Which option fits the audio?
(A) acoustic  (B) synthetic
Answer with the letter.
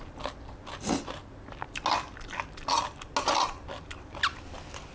A